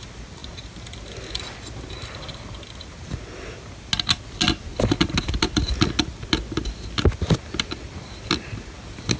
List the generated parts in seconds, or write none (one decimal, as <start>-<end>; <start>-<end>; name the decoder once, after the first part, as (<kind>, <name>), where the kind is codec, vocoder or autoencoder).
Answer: none